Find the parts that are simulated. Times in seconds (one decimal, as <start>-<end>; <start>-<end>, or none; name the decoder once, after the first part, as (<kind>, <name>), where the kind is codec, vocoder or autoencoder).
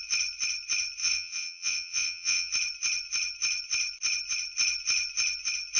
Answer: 1.0-2.5 (vocoder, WaveNeXt)